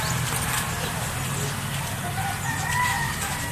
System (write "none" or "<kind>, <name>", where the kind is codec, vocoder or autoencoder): none